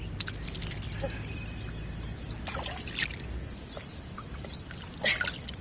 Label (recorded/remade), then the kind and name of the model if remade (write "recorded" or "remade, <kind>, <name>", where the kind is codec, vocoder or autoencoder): recorded